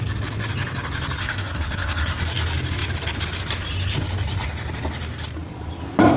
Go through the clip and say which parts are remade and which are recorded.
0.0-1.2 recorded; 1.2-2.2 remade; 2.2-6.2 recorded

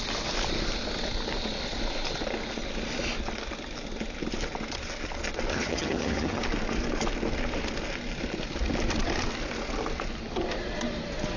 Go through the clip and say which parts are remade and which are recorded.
0.0-5.5 recorded; 5.5-6.4 remade; 6.4-11.4 recorded

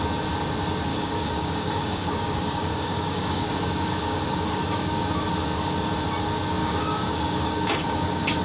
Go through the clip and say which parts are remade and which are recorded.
0.0-0.9 recorded; 0.9-5.3 remade; 5.3-6.6 recorded; 6.6-8.4 remade

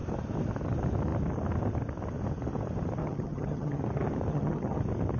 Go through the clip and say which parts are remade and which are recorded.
0.0-3.0 recorded; 3.0-3.8 remade; 3.8-4.3 recorded; 4.3-4.8 remade; 4.8-5.2 recorded

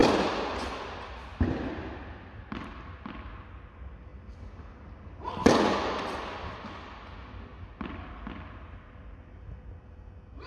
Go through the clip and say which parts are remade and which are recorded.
0.0-10.5 recorded

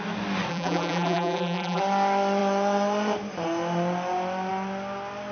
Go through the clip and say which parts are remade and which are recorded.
0.0-0.5 recorded; 0.5-1.8 remade; 1.8-5.3 recorded

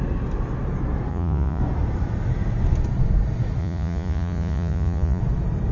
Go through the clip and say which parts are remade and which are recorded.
0.0-1.1 recorded; 1.1-1.6 remade; 1.6-3.6 recorded; 3.6-5.2 remade; 5.2-5.7 recorded

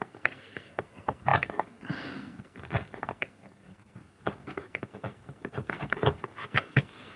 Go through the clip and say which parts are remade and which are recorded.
0.0-7.2 remade